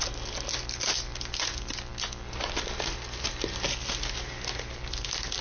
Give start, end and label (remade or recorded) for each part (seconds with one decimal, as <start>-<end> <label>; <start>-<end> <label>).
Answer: 0.0-5.4 recorded

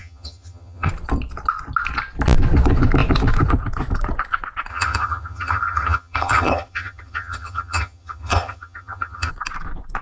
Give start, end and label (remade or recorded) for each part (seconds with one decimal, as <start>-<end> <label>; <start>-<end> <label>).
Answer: 0.0-0.9 remade; 0.9-4.7 recorded; 4.7-9.3 remade; 9.3-10.0 recorded

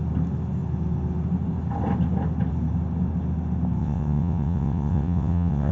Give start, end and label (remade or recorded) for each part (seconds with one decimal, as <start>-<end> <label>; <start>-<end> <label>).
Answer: 0.0-3.8 recorded; 3.8-5.7 remade

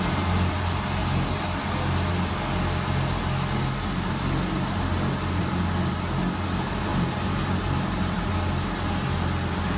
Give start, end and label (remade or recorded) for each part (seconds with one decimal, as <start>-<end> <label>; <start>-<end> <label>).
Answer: 0.0-5.4 recorded; 5.4-5.9 remade; 5.9-6.9 recorded; 6.9-8.3 remade; 8.3-9.8 recorded

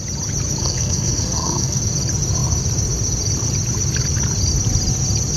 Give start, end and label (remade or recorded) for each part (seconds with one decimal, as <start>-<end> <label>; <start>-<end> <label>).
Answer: 0.0-0.6 recorded; 0.6-1.8 remade; 1.8-5.4 recorded